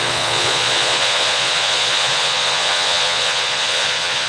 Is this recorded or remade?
remade